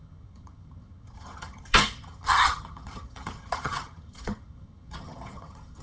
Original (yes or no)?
no